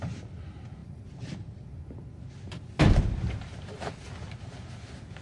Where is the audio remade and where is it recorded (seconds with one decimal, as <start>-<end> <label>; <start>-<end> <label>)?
0.0-5.2 recorded